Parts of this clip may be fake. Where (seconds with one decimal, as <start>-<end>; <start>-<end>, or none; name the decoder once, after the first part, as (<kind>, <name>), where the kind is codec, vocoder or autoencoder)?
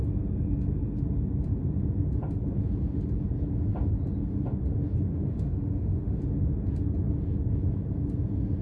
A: 5.1-6.2 (autoencoder, DAC-VAE)